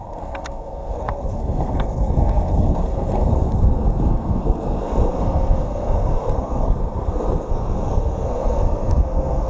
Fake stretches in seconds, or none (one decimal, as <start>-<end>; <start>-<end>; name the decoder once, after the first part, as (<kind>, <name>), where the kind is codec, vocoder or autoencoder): 0.0-9.5 (codec, SNAC)